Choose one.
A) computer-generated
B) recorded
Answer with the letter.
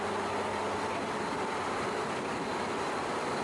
B